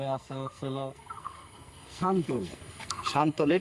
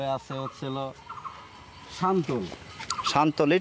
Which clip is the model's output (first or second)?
first